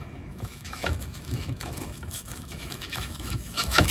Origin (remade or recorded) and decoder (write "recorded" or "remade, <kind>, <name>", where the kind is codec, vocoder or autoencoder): remade, autoencoder, DAC-VAE